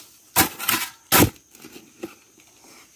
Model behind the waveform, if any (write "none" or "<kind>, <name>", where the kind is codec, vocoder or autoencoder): none